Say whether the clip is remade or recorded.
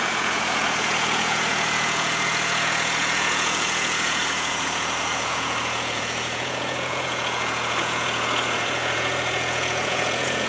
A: remade